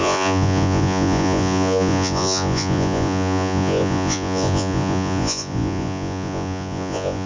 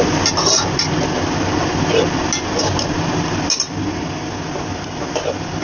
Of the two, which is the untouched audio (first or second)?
second